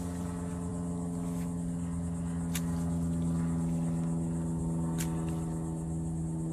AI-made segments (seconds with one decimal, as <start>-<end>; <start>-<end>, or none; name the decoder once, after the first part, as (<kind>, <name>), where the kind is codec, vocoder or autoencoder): none

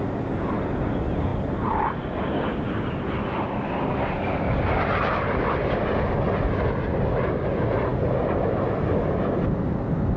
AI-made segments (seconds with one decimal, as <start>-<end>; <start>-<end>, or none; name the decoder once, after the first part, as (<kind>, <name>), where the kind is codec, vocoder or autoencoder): 3.9-4.6 (codec, DAC)

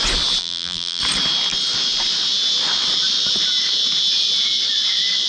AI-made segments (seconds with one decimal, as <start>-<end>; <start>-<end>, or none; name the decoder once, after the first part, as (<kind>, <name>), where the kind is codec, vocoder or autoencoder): 0.4-1.0 (vocoder, BigVGAN v2)

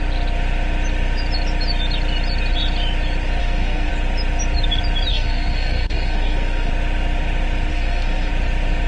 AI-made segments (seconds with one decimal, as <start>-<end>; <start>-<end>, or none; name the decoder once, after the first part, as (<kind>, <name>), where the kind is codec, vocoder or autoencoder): 3.4-3.9 (codec, SNAC); 5.1-6.7; 7.7-8.3

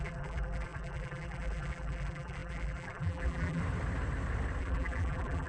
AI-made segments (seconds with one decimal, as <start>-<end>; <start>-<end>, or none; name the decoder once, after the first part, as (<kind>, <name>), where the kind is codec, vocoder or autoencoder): 0.0-3.6 (vocoder, BigVGAN v2); 4.6-5.5

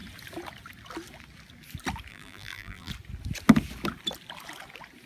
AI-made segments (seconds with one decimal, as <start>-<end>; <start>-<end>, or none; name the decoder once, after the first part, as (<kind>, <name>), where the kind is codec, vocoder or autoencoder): 2.1-2.9 (vocoder, BigVGAN v2)